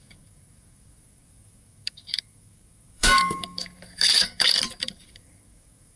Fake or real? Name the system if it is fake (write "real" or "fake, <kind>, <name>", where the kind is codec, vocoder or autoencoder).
fake, codec, DAC